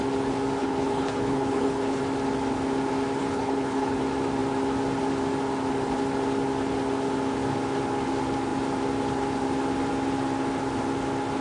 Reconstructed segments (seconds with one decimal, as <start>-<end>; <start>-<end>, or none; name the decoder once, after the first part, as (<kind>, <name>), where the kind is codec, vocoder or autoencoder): 0.6-2.0 (codec, HILCodec); 3.2-4.0